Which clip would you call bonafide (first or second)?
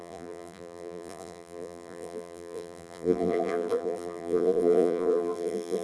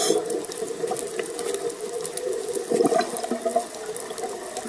second